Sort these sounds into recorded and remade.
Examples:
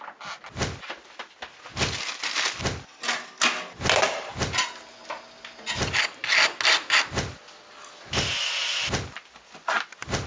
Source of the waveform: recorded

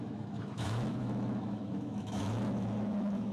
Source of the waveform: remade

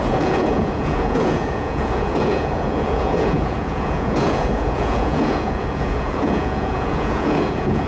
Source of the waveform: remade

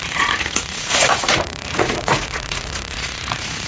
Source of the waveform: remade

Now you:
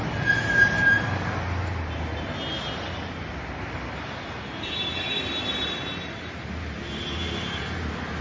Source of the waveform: recorded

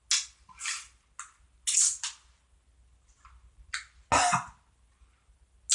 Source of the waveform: recorded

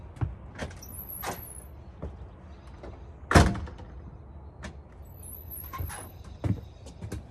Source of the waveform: recorded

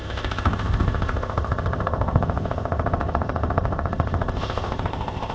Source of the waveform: remade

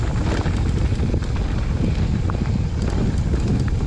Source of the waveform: recorded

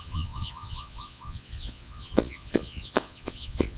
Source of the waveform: remade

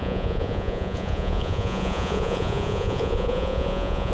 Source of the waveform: remade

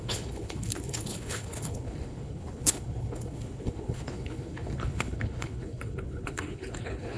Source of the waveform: remade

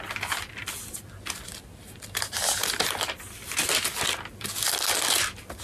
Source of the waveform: recorded